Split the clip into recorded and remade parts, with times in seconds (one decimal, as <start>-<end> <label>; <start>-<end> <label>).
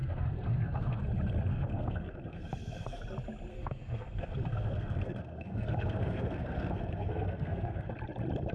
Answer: 0.0-1.0 remade; 1.0-1.5 recorded; 1.5-3.0 remade; 3.0-3.5 recorded; 3.5-7.9 remade; 7.9-8.5 recorded